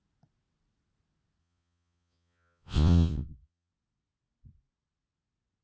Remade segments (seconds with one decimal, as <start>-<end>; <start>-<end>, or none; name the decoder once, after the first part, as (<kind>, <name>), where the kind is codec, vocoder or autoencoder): 1.4-3.7 (vocoder, Vocos)